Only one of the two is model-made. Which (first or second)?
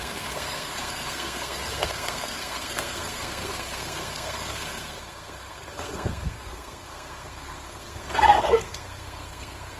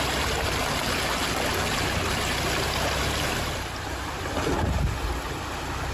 first